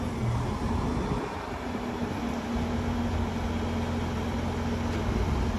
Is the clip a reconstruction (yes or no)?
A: no